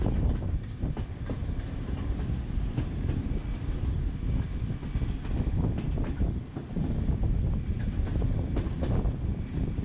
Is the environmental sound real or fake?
real